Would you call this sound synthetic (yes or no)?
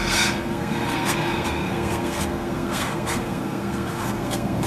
yes